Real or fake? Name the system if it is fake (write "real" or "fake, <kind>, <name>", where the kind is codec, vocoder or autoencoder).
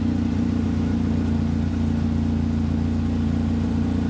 real